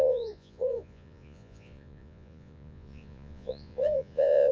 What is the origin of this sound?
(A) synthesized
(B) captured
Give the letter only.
A